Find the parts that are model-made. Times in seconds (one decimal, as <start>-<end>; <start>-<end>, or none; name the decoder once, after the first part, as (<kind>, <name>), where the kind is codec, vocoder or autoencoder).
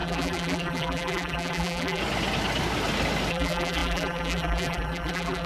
0.0-2.0 (vocoder, BigVGAN v2); 3.3-5.5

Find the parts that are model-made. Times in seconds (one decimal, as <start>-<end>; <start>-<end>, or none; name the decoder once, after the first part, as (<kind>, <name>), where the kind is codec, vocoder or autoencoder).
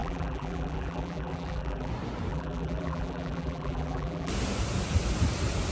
0.0-1.9 (vocoder, BigVGAN v2); 2.3-4.3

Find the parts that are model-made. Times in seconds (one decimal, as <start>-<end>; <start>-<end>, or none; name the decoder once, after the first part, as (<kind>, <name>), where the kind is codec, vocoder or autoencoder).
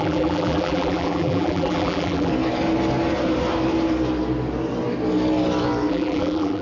0.0-2.3 (vocoder, BigVGAN v2); 5.9-6.6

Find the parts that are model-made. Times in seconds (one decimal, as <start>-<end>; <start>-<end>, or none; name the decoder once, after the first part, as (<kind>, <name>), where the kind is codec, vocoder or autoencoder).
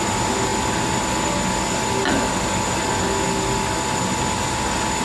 none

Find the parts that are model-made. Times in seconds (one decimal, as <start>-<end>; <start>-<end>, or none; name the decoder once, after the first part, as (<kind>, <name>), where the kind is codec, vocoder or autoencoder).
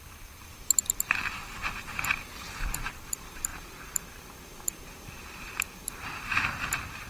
0.0-7.1 (vocoder, BigVGAN v2)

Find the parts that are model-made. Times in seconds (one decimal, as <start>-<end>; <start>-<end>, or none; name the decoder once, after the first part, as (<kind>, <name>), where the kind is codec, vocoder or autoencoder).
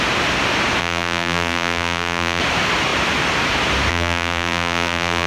0.8-2.4 (vocoder, BigVGAN v2); 3.9-5.3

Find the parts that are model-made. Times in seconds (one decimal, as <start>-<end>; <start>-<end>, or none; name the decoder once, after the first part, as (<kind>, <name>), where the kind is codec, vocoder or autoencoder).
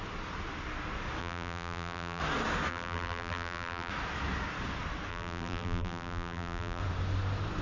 1.2-2.2 (vocoder, BigVGAN v2); 2.7-3.9; 5.1-6.8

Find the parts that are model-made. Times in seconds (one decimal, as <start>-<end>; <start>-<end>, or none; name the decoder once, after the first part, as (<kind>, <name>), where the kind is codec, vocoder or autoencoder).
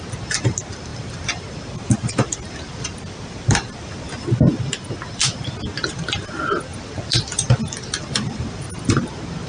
0.9-4.0 (vocoder, BigVGAN v2); 6.7-9.0